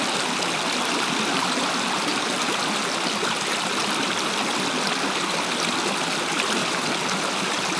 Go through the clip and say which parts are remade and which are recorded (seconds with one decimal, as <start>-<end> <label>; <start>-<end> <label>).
0.0-6.6 recorded; 6.6-7.2 remade; 7.2-7.8 recorded